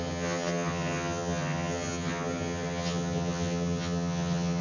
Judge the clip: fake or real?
fake